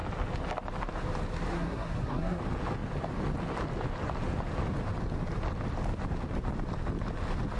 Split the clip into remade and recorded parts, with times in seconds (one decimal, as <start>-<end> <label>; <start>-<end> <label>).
0.0-1.5 recorded; 1.5-2.4 remade; 2.4-7.6 recorded